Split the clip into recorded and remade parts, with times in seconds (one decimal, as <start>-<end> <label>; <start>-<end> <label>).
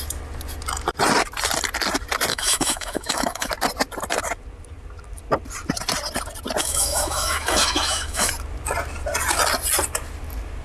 0.0-2.3 recorded; 2.3-3.5 remade; 3.5-6.6 recorded; 6.6-8.3 remade; 8.3-10.6 recorded